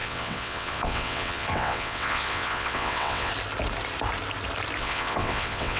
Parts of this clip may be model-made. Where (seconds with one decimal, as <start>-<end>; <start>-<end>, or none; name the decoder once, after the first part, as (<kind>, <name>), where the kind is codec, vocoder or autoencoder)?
0.0-3.3 (vocoder, WaveNeXt); 4.8-5.8